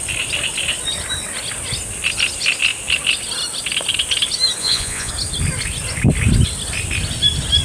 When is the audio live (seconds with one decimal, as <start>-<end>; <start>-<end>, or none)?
0.0-4.6; 5.1-7.6